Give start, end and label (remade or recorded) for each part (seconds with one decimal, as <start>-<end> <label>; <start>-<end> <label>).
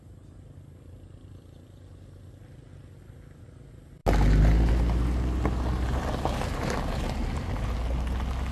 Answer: 0.0-8.5 recorded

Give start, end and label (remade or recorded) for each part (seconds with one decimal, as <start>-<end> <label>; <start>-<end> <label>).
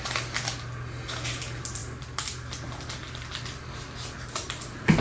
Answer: 0.0-5.0 recorded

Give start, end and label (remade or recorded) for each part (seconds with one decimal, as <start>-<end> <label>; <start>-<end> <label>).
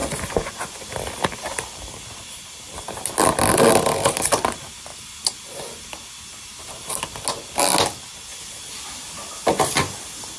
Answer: 0.0-0.8 remade; 0.8-10.4 recorded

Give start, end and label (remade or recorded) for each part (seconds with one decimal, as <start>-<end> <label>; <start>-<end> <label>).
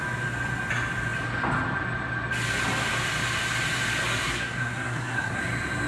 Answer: 0.0-4.2 recorded; 4.2-5.4 remade; 5.4-5.9 recorded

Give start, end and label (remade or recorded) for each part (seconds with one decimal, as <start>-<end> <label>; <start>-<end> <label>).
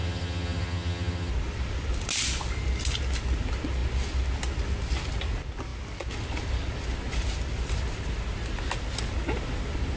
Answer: 0.0-1.3 remade; 1.3-10.0 recorded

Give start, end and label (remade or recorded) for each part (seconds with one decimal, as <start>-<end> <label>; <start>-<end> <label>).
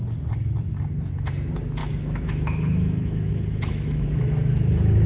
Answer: 0.0-1.8 recorded; 1.8-5.1 remade